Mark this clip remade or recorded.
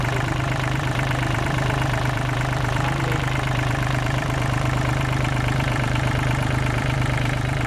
remade